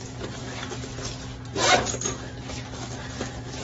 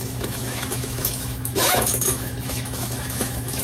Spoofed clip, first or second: second